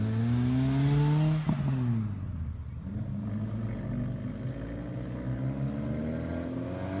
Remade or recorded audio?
recorded